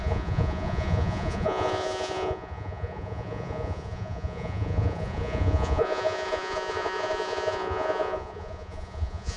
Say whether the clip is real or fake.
fake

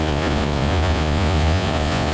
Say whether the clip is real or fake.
fake